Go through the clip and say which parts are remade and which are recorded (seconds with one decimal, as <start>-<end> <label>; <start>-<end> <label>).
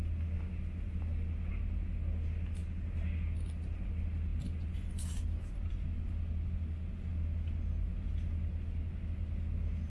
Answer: 0.0-9.9 recorded